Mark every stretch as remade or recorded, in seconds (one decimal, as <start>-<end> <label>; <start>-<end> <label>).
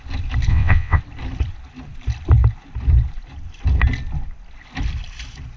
0.0-0.5 recorded; 0.5-1.0 remade; 1.0-5.6 recorded